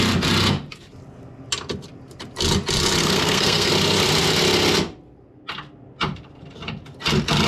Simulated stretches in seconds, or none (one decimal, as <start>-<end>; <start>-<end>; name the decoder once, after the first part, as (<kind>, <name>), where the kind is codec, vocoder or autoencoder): 3.0-3.7 (codec, SNAC)